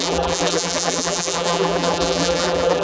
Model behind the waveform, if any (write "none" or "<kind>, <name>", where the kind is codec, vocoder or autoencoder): vocoder, BigVGAN v2